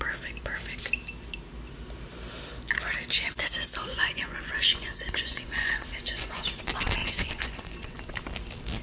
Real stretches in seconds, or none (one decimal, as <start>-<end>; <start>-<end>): 0.0-3.9; 6.6-7.0; 8.0-8.8